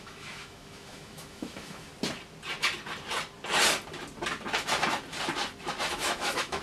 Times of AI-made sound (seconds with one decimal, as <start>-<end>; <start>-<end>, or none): 0.0-1.9; 5.9-6.6